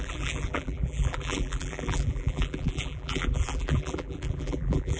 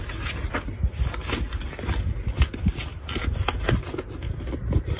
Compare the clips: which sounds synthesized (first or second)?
first